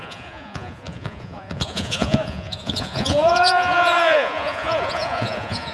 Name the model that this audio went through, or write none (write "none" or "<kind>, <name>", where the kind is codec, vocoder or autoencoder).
vocoder, Vocos